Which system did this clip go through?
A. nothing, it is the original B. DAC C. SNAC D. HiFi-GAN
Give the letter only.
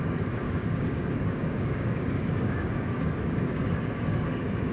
B